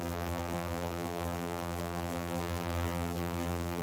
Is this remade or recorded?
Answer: remade